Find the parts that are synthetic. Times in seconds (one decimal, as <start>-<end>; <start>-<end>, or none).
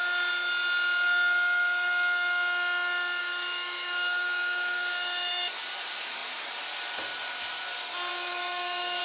3.2-5.6; 8.1-9.0